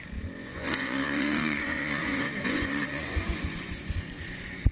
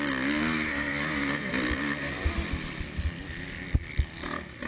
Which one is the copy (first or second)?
first